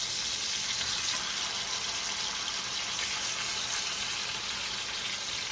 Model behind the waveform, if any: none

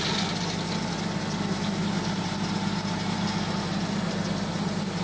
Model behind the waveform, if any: none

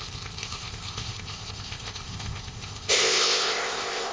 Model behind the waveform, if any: codec, ZipCodec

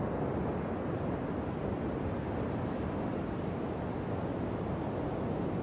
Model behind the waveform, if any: none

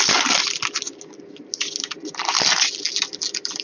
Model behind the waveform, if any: none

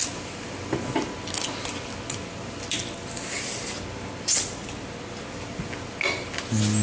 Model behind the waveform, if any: none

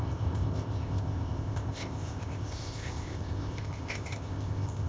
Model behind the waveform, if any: codec, ZipCodec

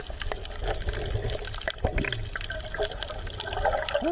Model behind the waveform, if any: none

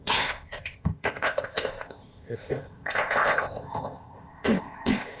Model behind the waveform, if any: codec, ZipCodec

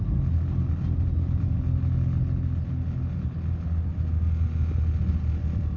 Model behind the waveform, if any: none